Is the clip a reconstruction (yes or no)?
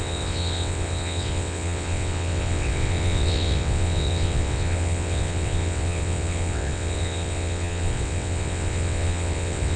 yes